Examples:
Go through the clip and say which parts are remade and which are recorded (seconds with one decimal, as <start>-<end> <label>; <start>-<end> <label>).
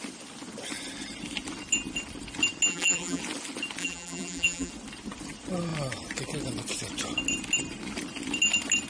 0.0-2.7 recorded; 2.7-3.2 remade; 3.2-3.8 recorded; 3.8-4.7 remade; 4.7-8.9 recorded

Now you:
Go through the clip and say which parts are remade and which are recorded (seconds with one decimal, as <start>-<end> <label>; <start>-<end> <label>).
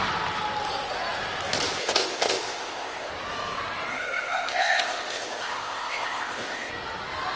0.0-1.8 recorded; 1.8-3.1 remade; 3.1-3.9 recorded; 3.9-6.7 remade; 6.7-7.4 recorded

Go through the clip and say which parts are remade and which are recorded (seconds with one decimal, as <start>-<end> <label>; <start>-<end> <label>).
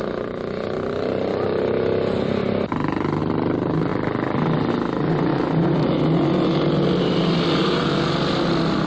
0.0-8.9 recorded